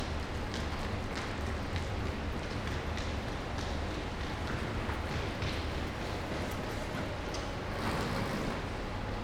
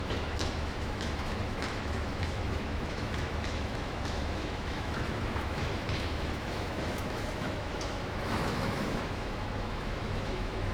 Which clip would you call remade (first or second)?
second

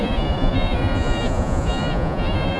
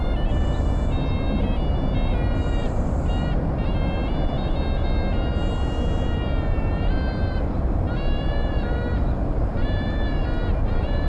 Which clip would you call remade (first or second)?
first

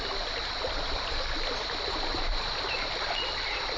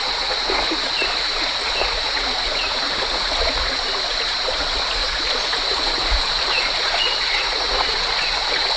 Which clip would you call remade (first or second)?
second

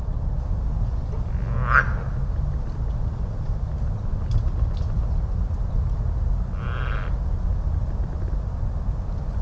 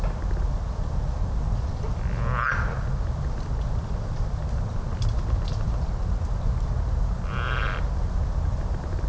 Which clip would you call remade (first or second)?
second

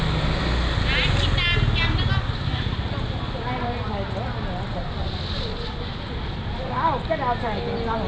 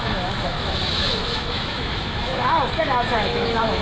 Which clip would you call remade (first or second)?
second